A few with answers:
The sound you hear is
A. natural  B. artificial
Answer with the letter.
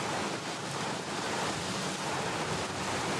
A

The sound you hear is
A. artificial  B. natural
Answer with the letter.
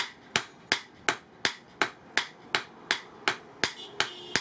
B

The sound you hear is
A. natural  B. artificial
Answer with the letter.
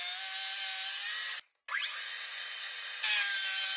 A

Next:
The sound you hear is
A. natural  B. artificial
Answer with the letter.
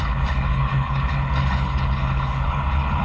B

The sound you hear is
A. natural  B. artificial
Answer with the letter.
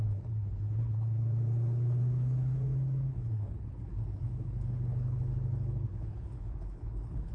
B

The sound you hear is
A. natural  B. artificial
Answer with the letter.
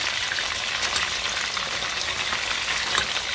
A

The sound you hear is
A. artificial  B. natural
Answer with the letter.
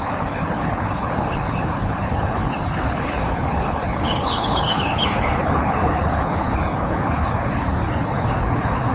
A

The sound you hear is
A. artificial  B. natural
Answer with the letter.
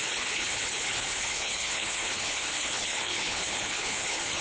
A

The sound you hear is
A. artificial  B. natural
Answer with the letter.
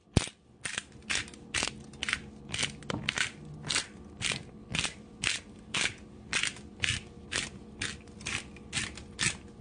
B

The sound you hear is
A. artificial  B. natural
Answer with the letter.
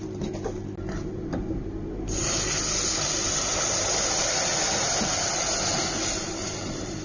B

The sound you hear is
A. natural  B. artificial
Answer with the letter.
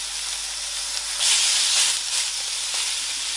A